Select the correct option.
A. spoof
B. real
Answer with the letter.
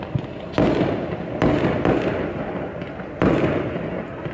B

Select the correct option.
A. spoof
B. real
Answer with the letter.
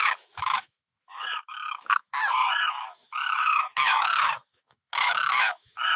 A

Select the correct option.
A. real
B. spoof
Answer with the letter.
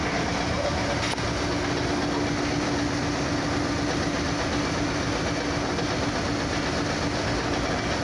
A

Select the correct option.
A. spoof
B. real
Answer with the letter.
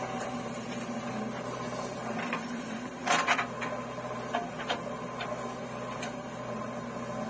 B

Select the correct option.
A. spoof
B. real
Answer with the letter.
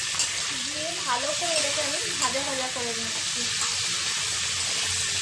B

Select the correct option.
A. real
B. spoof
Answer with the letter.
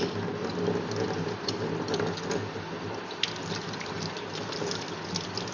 A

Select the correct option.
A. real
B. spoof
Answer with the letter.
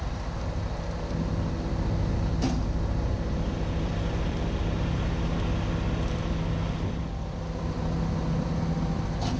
A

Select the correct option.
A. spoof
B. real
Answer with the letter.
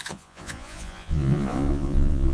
A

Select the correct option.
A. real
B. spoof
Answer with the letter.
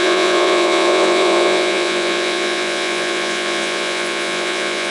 B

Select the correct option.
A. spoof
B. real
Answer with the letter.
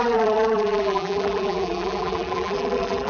A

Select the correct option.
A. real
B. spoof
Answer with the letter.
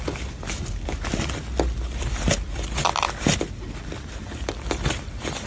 A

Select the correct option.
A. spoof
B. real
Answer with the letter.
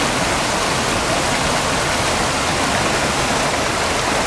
B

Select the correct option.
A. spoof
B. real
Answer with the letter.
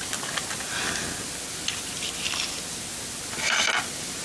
B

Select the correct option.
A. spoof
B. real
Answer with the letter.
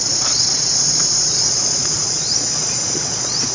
A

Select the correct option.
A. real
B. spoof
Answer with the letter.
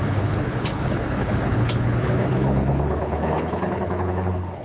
B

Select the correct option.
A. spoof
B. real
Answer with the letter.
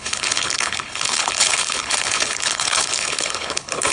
A